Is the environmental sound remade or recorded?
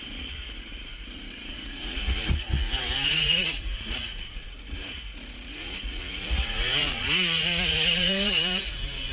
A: remade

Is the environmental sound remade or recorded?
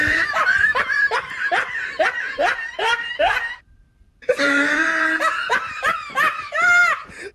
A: remade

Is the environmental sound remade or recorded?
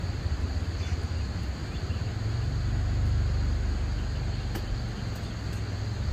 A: recorded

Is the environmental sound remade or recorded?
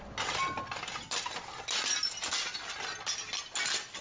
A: recorded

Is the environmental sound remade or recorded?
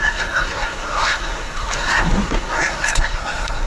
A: remade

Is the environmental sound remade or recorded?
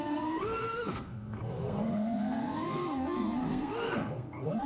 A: remade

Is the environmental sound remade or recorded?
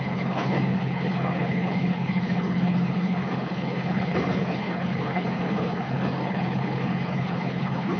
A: remade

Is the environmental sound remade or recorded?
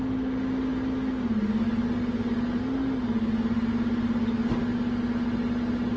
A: recorded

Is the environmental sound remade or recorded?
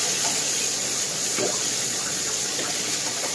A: remade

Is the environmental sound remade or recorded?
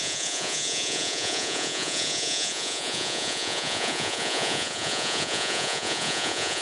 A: remade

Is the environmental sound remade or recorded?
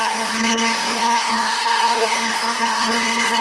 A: remade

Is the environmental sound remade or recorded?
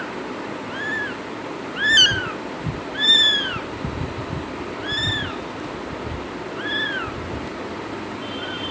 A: remade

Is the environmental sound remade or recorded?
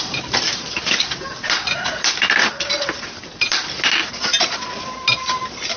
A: remade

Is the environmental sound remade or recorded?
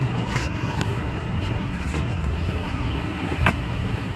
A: remade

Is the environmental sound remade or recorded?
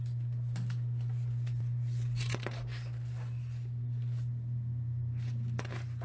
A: remade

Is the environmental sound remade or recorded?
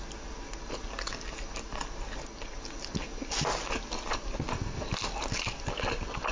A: recorded